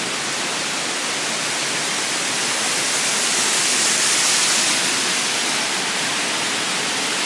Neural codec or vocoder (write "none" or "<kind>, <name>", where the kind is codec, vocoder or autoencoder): none